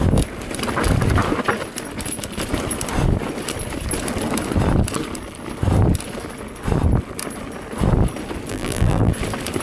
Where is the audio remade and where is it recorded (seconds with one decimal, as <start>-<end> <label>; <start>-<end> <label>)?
0.0-8.5 recorded; 8.5-9.1 remade; 9.1-9.6 recorded